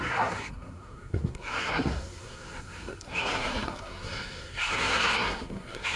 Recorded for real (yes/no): no